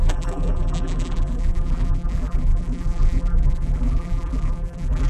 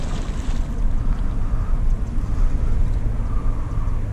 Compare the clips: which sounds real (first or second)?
second